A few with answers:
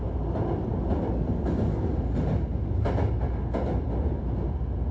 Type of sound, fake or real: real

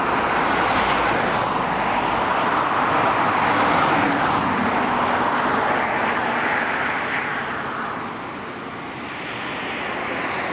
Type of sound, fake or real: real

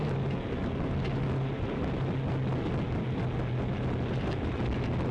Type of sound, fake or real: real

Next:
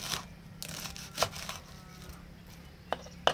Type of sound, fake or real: real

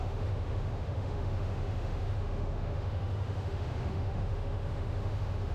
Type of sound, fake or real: fake